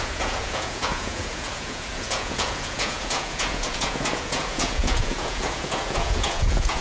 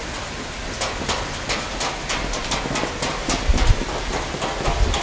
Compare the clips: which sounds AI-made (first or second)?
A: first